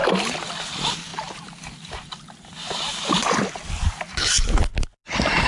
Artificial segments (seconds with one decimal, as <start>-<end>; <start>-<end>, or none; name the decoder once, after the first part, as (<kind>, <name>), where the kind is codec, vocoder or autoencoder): none